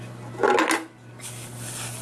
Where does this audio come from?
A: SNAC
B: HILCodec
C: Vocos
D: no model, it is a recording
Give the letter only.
D